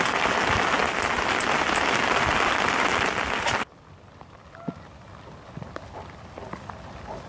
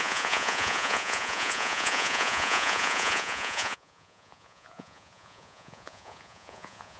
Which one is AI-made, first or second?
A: second